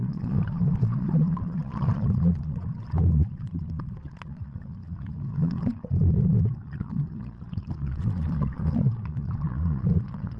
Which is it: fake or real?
fake